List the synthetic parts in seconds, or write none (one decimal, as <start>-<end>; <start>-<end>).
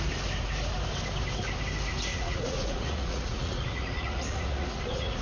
2.1-5.2